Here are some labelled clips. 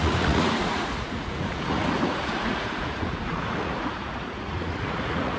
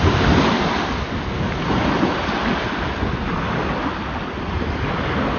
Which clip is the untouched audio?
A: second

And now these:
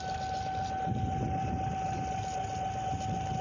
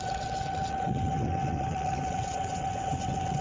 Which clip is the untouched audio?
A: first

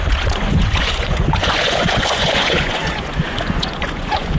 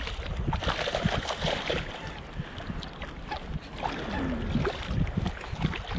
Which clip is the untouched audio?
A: second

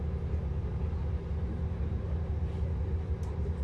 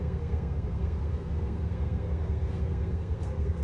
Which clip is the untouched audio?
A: first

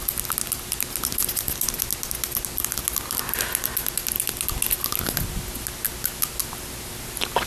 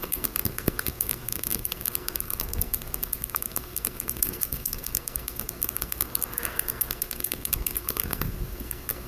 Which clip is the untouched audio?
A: first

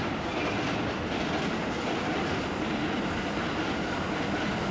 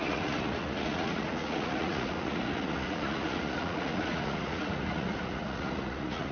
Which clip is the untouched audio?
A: first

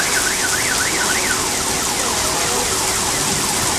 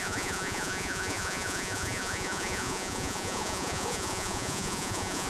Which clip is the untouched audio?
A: first